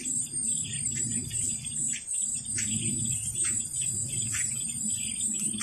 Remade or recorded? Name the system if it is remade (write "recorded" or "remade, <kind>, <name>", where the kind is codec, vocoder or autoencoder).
remade, vocoder, BigVGAN v2